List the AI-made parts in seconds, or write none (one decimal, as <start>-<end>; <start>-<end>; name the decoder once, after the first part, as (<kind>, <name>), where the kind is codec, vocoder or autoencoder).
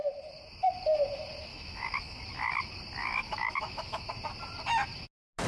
1.5-2.2 (autoencoder, DAC-VAE); 3.0-4.1